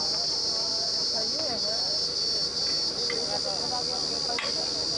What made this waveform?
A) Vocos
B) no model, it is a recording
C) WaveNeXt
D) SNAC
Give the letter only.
B